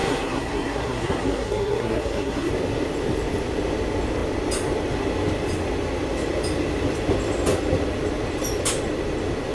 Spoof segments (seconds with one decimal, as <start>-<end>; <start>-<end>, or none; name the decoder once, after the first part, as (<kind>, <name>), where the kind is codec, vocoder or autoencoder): 0.0-2.5 (codec, SNAC)